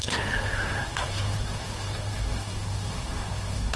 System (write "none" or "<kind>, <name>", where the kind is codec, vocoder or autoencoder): codec, SNAC